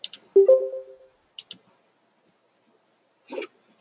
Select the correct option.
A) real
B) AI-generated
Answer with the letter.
A